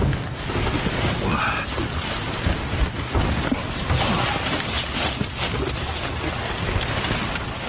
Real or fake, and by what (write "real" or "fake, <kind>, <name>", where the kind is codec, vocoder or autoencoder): real